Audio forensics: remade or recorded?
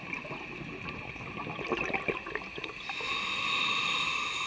recorded